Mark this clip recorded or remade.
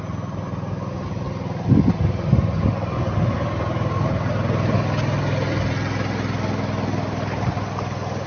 recorded